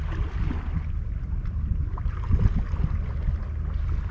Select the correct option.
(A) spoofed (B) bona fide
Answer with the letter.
B